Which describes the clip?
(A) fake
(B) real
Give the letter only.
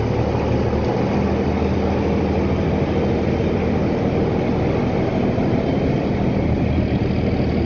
B